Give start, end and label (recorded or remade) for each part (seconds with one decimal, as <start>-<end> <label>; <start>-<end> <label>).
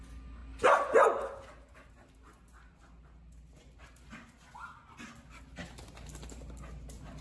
0.0-7.2 recorded